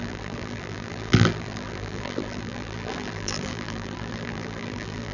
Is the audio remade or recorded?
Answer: remade